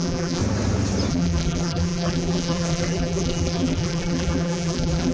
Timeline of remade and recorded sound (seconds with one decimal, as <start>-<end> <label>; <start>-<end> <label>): 0.0-0.4 remade; 0.4-1.1 recorded; 1.1-5.1 remade